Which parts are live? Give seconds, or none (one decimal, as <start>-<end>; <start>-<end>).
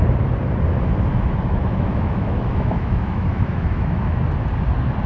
0.0-1.1; 4.2-5.1